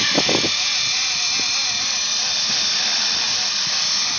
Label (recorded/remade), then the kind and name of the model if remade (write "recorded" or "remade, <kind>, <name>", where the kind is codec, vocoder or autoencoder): recorded